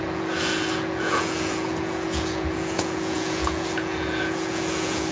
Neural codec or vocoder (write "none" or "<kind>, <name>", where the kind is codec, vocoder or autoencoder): vocoder, Vocos